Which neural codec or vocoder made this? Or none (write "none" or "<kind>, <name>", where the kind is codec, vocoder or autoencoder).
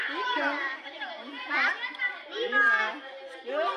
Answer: vocoder, BigVGAN v2